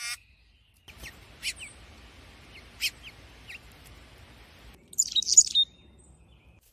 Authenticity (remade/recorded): recorded